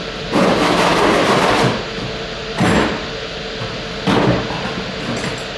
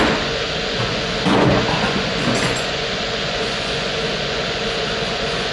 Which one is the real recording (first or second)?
first